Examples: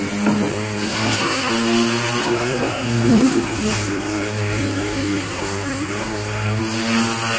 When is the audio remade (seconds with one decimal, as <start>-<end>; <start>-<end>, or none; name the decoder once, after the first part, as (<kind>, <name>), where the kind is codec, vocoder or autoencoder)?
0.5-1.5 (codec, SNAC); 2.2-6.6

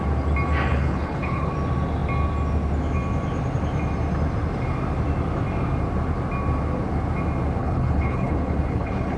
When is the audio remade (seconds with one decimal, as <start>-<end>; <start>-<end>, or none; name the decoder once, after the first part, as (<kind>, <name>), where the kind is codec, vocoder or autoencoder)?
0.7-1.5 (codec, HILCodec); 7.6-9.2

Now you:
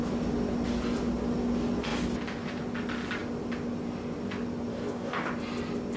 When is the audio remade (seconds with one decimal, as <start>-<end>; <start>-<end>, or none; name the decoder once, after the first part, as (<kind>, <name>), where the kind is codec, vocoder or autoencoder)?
4.7-5.3 (codec, DAC)